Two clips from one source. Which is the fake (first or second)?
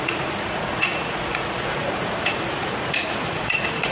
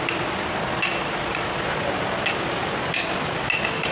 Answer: first